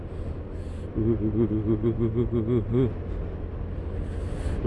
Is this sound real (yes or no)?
yes